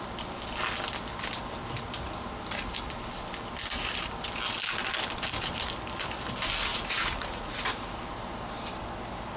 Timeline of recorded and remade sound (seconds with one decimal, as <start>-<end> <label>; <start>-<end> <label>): 0.0-6.7 recorded; 6.7-7.6 remade; 7.6-9.4 recorded